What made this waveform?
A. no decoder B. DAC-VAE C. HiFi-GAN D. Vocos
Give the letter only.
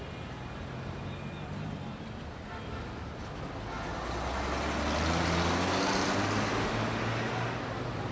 A